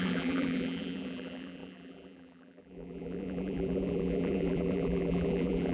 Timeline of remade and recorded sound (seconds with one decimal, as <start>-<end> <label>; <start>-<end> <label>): 0.0-5.7 remade